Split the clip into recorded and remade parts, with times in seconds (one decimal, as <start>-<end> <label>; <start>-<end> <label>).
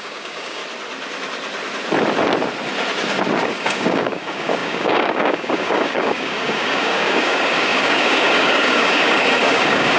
0.0-0.6 remade; 0.6-3.5 recorded; 3.5-10.0 remade